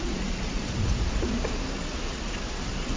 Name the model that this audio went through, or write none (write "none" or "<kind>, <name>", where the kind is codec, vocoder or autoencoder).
vocoder, Vocos